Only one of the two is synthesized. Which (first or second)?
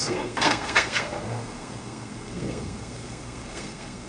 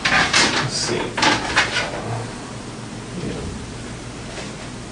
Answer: first